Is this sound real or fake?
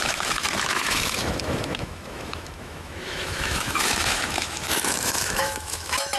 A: fake